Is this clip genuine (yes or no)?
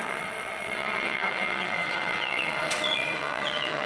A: no